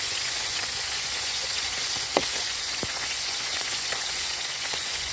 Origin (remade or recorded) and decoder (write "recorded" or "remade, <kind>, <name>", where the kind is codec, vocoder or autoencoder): remade, vocoder, Vocos